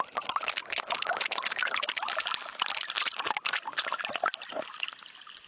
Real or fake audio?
real